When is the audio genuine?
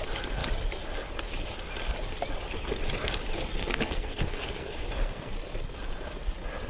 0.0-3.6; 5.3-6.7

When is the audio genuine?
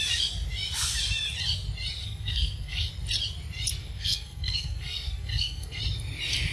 0.0-2.0; 2.9-3.8; 5.8-6.5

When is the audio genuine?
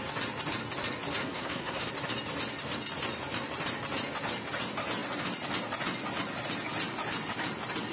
0.0-1.2; 1.9-7.9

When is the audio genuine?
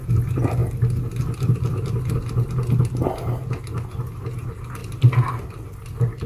0.0-6.3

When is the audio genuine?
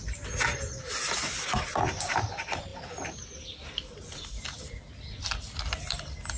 0.0-6.4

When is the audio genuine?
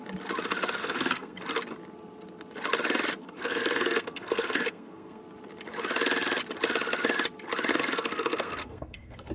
0.0-0.8; 1.4-3.2; 5.2-7.7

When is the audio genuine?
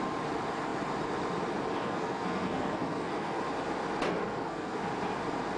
0.0-1.8; 3.4-4.2; 4.8-5.6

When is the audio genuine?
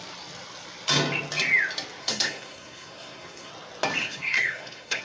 0.0-2.0; 3.5-4.0